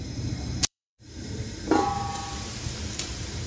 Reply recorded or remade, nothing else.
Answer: remade